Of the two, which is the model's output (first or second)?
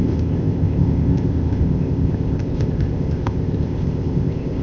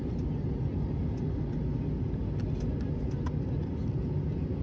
first